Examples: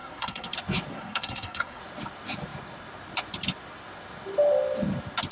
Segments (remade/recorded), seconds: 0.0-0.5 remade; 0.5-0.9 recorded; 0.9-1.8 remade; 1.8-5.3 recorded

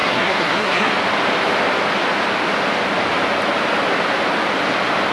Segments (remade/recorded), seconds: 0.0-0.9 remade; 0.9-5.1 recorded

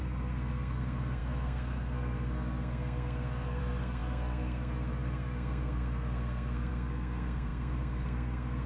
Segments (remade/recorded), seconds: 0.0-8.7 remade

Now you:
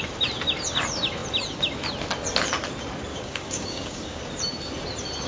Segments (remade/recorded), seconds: 0.0-3.1 recorded; 3.1-4.2 remade; 4.2-5.3 recorded